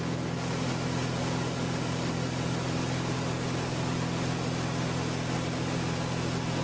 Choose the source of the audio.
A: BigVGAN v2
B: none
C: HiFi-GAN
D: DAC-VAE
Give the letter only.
B